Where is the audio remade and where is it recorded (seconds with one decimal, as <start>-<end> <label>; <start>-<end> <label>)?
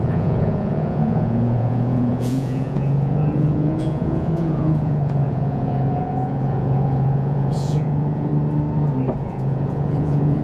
0.0-8.3 remade; 8.3-9.2 recorded; 9.2-10.4 remade